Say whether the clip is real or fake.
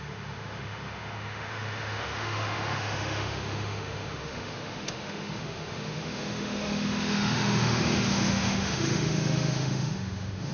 fake